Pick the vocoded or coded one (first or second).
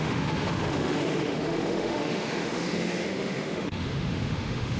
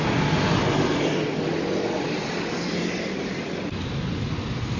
first